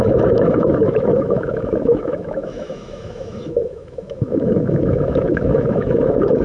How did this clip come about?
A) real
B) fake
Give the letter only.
B